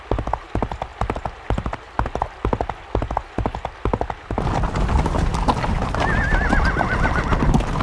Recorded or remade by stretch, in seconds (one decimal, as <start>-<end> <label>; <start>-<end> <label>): 0.0-7.8 recorded

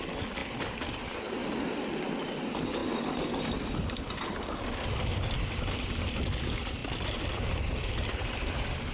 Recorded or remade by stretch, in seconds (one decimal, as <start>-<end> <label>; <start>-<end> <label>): 0.0-8.9 recorded

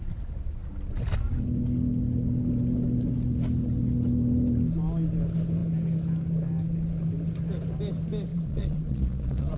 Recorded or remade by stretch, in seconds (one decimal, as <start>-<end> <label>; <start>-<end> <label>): 0.0-8.3 recorded; 8.3-9.6 remade

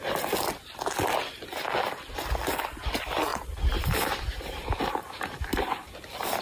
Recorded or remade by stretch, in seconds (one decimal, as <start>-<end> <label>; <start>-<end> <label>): 0.0-3.3 recorded; 3.3-6.0 remade; 6.0-6.4 recorded

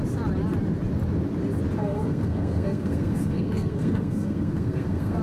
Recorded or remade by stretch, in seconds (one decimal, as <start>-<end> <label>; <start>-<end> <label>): 0.0-1.8 recorded; 1.8-5.2 remade

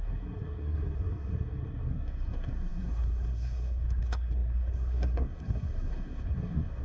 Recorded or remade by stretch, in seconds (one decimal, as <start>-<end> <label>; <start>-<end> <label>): 0.0-6.8 remade

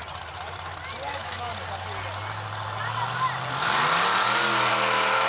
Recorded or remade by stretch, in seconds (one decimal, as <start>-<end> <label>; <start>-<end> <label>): 0.0-1.1 recorded; 1.1-1.5 remade; 1.5-4.7 recorded; 4.7-5.3 remade

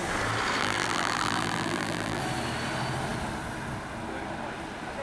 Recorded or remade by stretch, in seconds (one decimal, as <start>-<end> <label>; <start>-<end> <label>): 0.0-0.6 recorded; 0.6-2.2 remade; 2.2-5.0 recorded